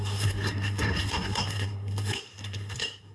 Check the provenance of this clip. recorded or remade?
remade